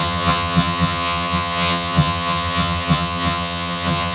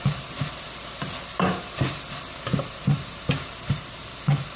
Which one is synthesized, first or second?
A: first